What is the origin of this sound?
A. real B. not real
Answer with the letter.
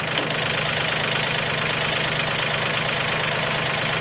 A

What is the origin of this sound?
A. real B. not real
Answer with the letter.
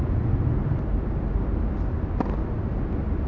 A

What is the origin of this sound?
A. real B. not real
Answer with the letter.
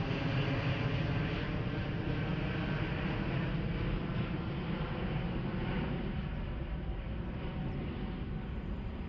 A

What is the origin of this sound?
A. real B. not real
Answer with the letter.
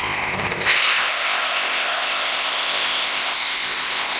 B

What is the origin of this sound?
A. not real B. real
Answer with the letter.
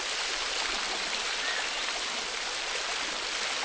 B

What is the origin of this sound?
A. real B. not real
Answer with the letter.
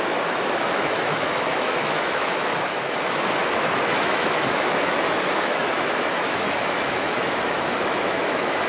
B